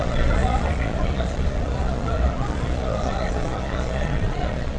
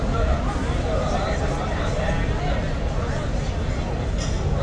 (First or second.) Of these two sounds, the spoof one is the first